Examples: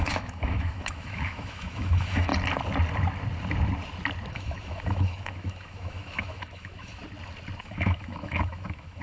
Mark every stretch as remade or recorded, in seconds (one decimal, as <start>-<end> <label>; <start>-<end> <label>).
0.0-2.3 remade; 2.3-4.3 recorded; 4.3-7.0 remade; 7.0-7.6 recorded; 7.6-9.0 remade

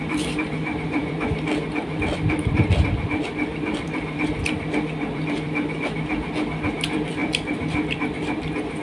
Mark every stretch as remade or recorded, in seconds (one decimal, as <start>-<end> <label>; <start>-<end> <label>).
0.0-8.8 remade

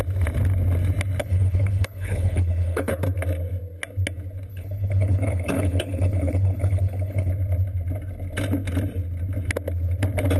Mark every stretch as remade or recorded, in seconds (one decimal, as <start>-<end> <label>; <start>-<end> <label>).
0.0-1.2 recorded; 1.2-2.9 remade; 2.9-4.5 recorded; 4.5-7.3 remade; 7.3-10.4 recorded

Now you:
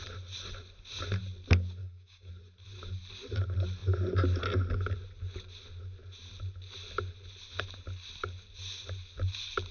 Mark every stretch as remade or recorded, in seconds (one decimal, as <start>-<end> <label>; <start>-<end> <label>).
0.0-1.8 recorded; 1.8-2.3 remade; 2.3-9.7 recorded